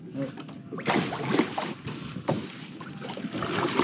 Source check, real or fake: real